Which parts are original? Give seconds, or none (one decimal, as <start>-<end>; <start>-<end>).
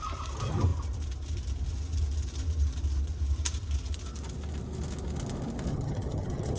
0.0-5.7